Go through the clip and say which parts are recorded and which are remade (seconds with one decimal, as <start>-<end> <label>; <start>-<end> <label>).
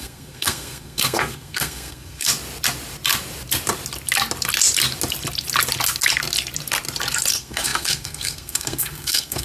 0.0-2.3 remade; 2.3-7.3 recorded; 7.3-9.4 remade